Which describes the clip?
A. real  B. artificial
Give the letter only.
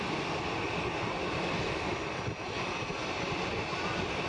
A